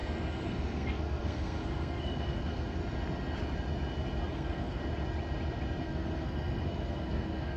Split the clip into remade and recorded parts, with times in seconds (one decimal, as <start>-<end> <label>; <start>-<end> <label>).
0.0-2.8 remade; 2.8-4.3 recorded; 4.3-4.8 remade; 4.8-5.8 recorded; 5.8-7.6 remade